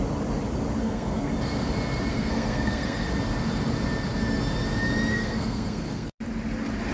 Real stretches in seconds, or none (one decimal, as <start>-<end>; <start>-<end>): 0.0-0.8; 1.3-2.1; 3.1-5.1; 6.2-6.9